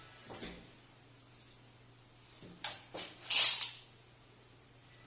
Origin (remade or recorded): recorded